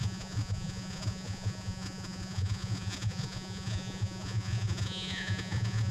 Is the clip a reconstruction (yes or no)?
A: yes